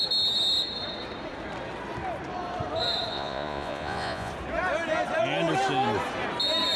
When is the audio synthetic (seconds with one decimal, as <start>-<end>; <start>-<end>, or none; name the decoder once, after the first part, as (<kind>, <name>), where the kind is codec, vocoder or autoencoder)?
3.1-4.3 (vocoder, Vocos)